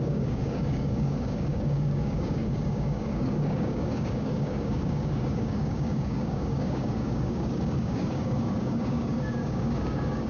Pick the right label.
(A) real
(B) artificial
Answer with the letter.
B